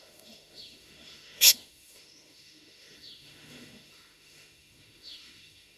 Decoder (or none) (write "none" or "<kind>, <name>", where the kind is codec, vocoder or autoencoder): autoencoder, DAC-VAE